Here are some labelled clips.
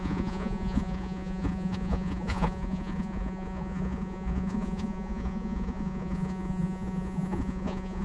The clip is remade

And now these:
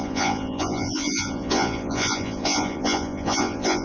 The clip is remade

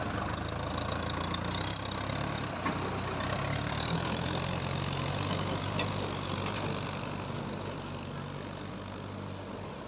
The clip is recorded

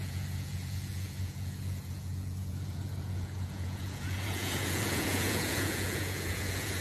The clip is remade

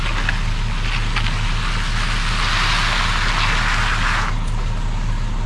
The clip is recorded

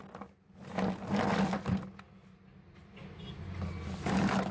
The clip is recorded